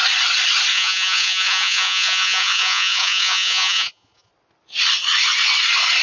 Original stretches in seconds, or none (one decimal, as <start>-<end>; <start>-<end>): 0.0-0.7; 4.3-6.0